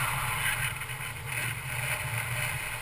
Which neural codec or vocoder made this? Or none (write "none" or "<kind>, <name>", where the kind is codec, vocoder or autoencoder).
none